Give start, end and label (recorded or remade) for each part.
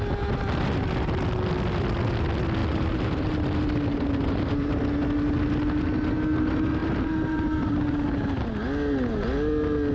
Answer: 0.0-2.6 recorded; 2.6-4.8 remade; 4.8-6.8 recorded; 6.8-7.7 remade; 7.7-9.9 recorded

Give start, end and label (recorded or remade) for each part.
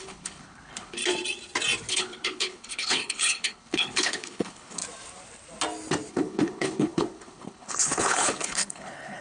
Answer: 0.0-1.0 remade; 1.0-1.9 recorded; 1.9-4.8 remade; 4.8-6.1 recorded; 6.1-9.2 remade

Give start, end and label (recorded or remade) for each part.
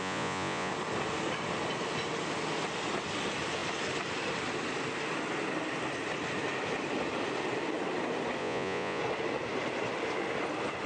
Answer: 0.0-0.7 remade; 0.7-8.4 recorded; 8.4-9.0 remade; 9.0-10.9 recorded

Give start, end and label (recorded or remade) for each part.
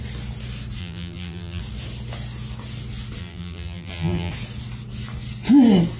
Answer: 0.0-0.8 recorded; 0.8-1.6 remade; 1.6-3.2 recorded; 3.2-4.3 remade; 4.3-6.0 recorded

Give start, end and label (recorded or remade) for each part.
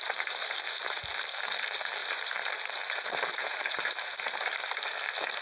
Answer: 0.0-0.4 recorded; 0.4-1.0 remade; 1.0-2.0 recorded; 2.0-4.9 remade; 4.9-5.4 recorded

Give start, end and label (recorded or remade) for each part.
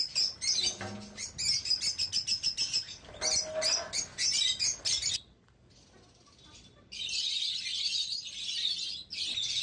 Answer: 0.0-9.6 recorded